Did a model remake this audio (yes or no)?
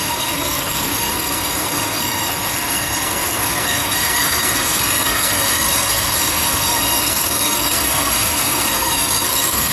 yes